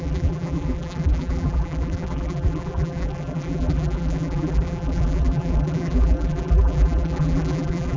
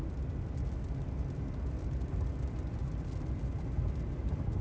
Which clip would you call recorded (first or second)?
second